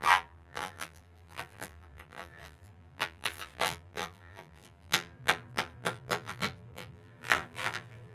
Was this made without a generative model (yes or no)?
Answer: no